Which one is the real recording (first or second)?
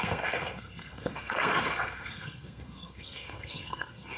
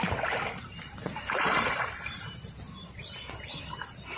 second